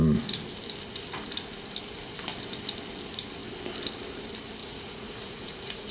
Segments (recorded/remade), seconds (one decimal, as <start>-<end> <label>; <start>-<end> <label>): 0.0-4.6 recorded; 4.6-5.9 remade

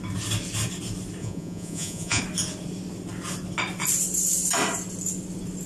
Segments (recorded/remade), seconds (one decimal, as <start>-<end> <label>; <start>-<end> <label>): 0.0-1.2 recorded; 1.2-2.2 remade; 2.2-5.7 recorded

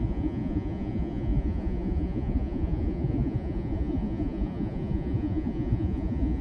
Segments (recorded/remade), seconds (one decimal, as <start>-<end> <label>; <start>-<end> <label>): 0.0-6.4 remade

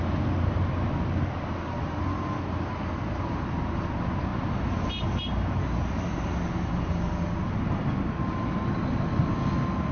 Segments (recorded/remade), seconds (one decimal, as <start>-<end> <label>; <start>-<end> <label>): 0.0-9.9 recorded

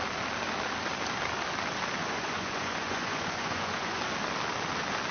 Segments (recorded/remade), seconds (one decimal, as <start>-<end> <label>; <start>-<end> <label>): 0.0-2.0 recorded; 2.0-4.0 remade; 4.0-5.1 recorded

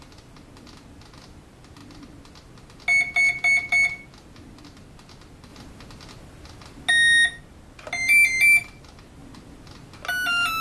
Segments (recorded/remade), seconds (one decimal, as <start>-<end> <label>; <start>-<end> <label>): 0.0-10.6 recorded